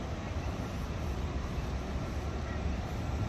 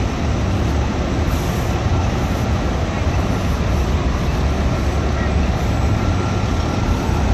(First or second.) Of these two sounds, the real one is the second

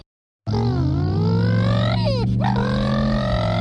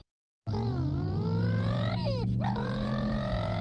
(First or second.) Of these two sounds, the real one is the first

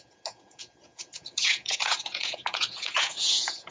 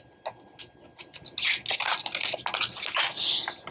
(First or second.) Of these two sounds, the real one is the second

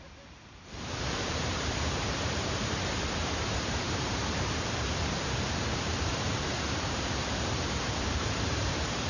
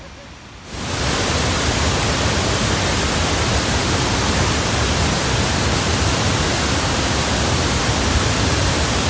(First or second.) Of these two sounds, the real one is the second